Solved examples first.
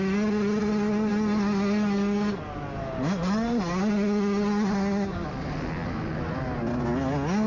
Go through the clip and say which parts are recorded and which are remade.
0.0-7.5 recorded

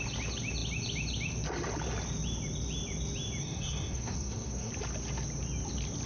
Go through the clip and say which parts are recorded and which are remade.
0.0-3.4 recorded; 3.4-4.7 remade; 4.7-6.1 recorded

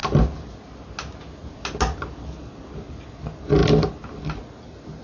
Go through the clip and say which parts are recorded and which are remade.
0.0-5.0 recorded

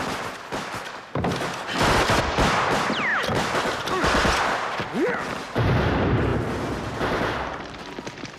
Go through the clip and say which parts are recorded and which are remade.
0.0-8.4 recorded